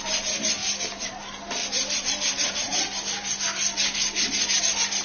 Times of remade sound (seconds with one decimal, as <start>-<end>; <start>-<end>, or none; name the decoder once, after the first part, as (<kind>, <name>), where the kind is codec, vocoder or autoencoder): none